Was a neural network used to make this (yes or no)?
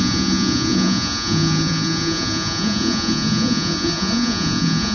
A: yes